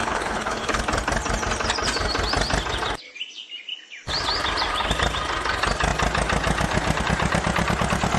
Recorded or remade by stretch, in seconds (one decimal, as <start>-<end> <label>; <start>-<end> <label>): 0.0-0.8 remade; 0.8-8.2 recorded